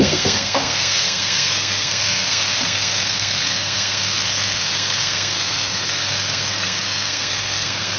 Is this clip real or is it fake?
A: fake